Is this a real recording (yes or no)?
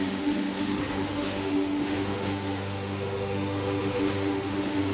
no